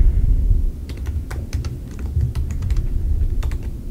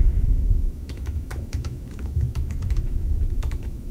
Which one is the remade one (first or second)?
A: second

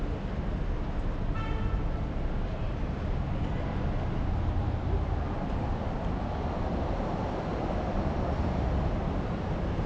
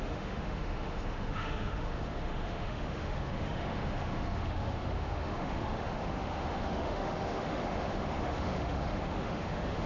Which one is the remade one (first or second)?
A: second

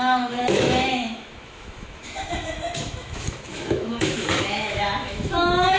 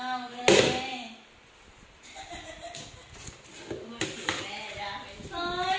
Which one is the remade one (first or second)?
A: first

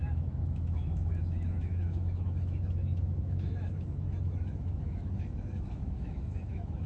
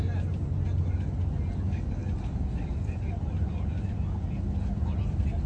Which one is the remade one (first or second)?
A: first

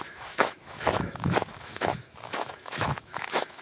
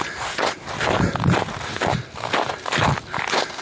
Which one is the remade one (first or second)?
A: first